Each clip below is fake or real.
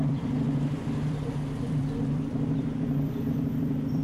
fake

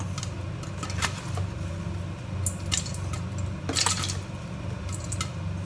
real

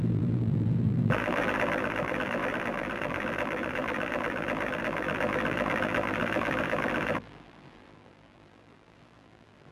fake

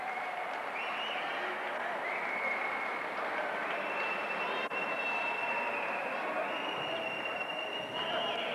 real